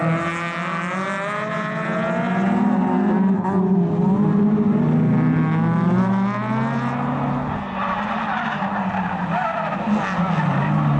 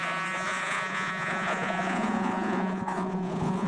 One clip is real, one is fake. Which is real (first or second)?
first